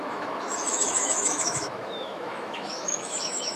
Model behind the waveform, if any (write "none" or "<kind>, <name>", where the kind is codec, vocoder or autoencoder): autoencoder, DAC-VAE